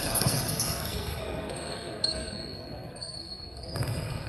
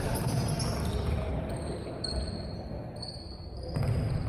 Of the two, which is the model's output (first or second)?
first